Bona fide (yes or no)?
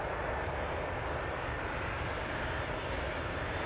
yes